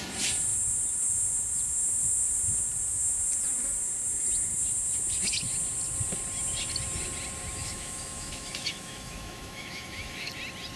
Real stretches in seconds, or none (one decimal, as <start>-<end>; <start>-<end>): 0.0-7.6; 10.3-10.8